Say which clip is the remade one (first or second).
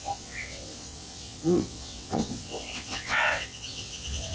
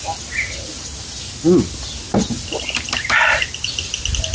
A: first